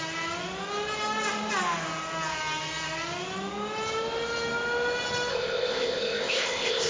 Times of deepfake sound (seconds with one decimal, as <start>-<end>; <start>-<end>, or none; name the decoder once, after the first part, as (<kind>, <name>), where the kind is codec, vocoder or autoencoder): 5.3-6.9 (codec, ZipCodec)